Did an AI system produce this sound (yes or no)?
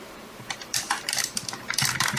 yes